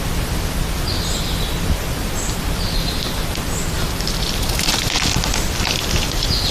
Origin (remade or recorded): recorded